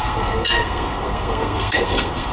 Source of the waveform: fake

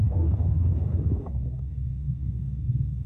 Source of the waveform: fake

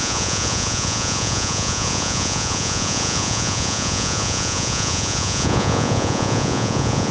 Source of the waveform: fake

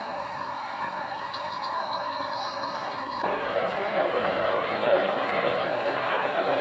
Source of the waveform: fake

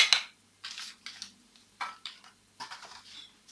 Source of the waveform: real